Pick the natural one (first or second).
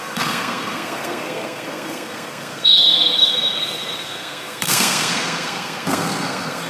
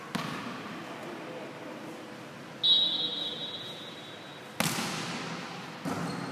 second